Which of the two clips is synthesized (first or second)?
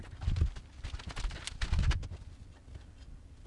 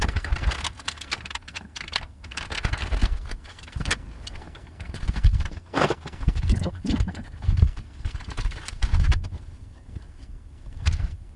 second